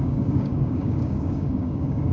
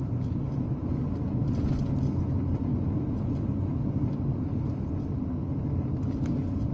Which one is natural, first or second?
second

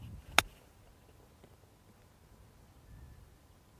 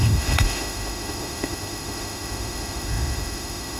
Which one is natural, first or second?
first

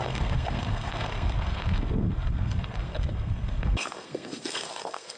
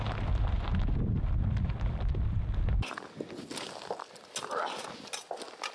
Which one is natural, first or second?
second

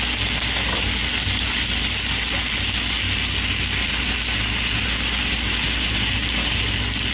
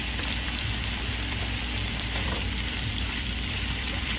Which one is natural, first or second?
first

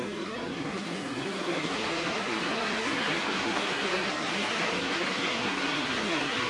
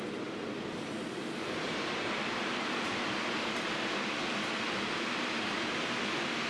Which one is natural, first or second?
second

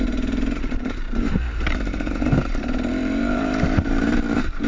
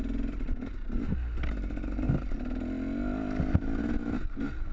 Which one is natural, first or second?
second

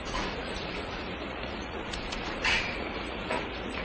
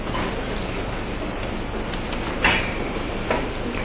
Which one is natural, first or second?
second